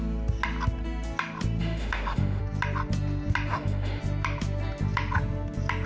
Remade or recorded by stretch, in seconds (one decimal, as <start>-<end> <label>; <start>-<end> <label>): 0.0-1.6 recorded; 1.6-2.4 remade; 2.4-3.5 recorded; 3.5-4.0 remade; 4.0-5.9 recorded

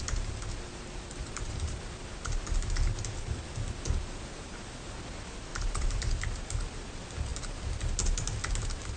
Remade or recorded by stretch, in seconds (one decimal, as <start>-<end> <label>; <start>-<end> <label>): 0.0-1.2 recorded; 1.2-1.8 remade; 1.8-5.5 recorded; 5.5-6.0 remade; 6.0-9.0 recorded

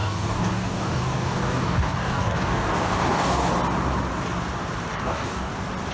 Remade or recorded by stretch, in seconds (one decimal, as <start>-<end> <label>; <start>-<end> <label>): 0.0-3.5 remade; 3.5-4.9 recorded; 4.9-5.5 remade; 5.5-5.9 recorded

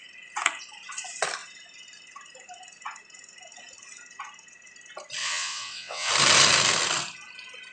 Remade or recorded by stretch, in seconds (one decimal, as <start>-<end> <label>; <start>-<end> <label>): 0.0-5.2 recorded; 5.2-6.1 remade; 6.1-7.7 recorded

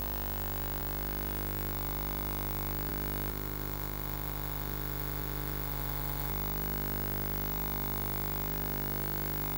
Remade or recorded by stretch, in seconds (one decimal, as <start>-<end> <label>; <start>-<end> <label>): 0.0-3.3 recorded; 3.3-6.3 remade; 6.3-9.6 recorded